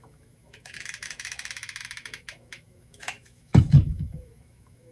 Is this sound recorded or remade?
remade